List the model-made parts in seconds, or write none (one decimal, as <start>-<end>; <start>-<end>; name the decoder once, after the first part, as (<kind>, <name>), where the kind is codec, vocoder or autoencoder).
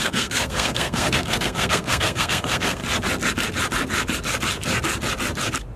0.0-2.8 (codec, SNAC)